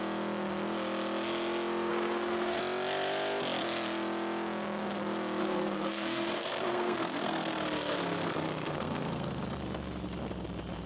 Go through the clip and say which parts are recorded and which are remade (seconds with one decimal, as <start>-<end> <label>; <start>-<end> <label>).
0.0-1.9 recorded; 1.9-2.6 remade; 2.6-5.4 recorded; 5.4-9.4 remade; 9.4-10.9 recorded